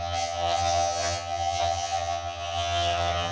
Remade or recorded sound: remade